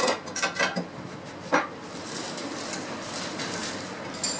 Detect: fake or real real